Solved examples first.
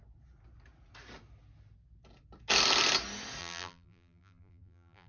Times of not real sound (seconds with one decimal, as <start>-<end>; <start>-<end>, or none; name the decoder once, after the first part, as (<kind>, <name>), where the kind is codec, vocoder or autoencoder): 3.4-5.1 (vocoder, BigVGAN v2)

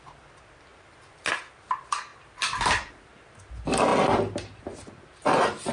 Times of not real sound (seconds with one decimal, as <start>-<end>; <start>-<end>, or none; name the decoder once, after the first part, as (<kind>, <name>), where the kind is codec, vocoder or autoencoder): 0.7-1.3 (vocoder, BigVGAN v2)

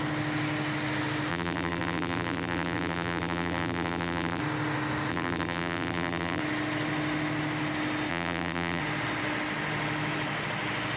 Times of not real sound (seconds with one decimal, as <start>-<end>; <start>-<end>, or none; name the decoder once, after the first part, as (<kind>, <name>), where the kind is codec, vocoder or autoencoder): 1.3-4.4 (vocoder, BigVGAN v2); 5.1-6.4; 8.1-8.8

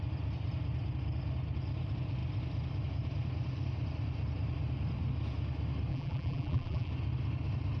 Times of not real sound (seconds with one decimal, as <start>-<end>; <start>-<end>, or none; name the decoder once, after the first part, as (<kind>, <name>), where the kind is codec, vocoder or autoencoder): 5.9-6.9 (vocoder, BigVGAN v2)